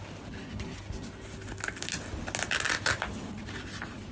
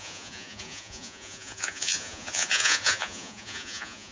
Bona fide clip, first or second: first